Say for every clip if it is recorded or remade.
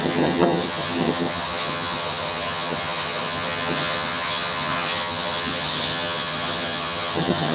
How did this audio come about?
remade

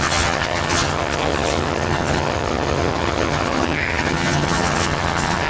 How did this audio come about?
remade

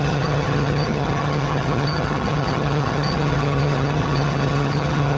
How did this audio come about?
remade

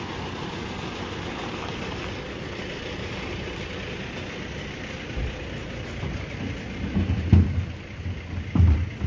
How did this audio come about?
recorded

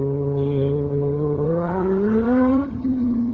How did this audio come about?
remade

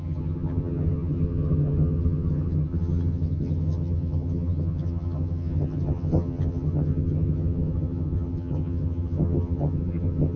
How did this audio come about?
remade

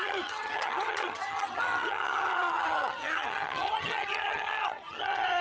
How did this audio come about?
remade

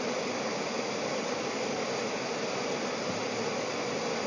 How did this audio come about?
recorded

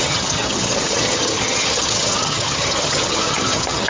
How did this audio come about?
remade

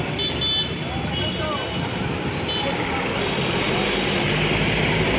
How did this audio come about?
recorded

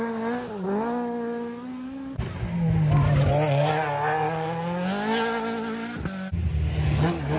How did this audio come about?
recorded